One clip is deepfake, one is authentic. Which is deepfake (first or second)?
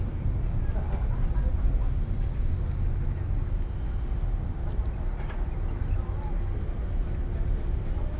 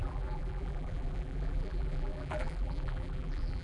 second